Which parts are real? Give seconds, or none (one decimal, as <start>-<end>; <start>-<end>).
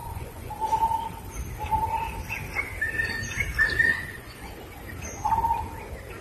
0.5-3.9; 4.5-6.2